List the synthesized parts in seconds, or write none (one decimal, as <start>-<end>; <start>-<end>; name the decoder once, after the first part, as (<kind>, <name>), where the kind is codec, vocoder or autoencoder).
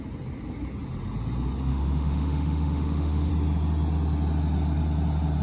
1.7-3.3 (autoencoder, DAC-VAE)